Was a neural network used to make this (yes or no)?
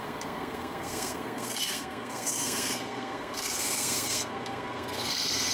yes